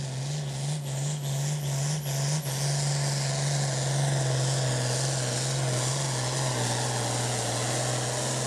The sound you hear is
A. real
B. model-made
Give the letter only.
A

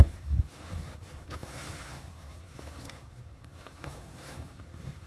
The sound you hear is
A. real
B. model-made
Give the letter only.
B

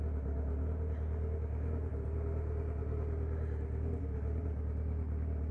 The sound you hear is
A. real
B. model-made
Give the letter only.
A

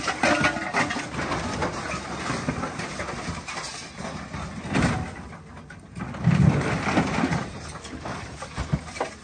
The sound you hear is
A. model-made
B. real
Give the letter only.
B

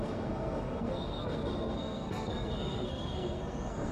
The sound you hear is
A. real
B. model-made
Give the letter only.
B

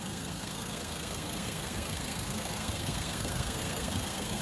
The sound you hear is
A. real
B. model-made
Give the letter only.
B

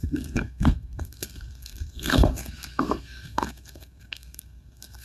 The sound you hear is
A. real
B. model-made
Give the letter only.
B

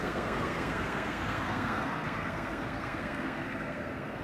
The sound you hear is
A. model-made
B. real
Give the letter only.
A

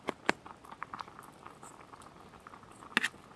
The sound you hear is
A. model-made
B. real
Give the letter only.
B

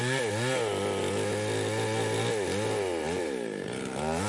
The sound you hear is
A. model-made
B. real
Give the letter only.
B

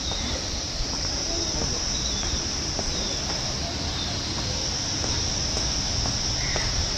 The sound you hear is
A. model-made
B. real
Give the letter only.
B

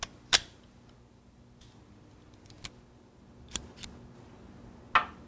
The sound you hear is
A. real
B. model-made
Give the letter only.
A